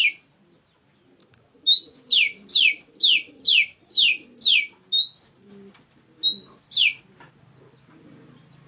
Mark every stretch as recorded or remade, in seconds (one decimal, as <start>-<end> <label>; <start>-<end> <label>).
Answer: 0.0-1.2 recorded; 1.2-2.1 remade; 2.1-8.7 recorded